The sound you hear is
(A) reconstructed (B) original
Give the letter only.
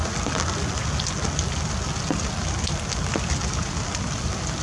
B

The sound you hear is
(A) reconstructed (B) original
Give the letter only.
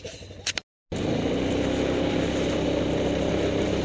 B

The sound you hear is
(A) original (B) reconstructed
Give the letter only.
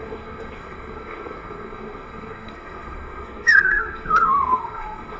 B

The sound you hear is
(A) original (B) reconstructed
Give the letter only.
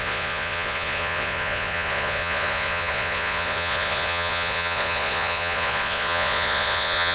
B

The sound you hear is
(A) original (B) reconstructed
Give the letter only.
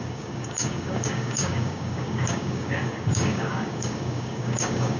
B